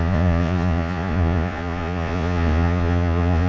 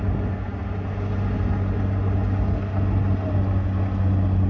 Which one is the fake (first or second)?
first